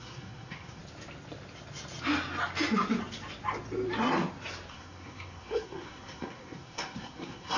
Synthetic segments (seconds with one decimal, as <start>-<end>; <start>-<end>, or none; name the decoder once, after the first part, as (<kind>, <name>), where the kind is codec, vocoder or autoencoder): 0.0-0.8 (codec, SNAC); 4.7-7.6